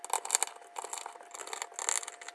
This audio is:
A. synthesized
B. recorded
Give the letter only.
B